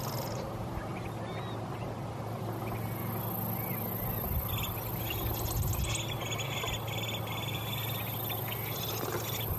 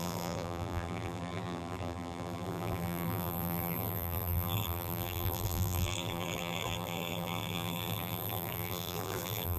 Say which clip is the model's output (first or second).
second